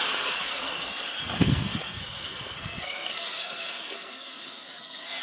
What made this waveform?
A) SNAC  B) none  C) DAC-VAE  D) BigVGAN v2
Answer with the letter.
A